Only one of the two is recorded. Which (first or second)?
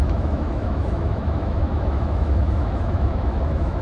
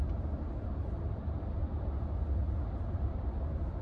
second